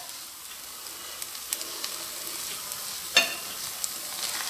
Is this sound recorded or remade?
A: recorded